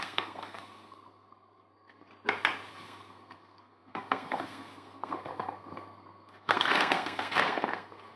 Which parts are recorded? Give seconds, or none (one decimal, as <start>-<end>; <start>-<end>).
2.1-2.7